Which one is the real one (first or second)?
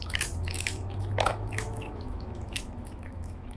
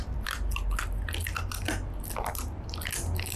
second